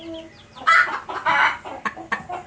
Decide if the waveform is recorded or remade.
recorded